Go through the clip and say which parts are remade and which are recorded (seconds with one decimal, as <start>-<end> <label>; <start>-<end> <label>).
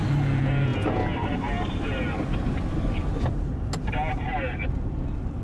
0.0-5.4 recorded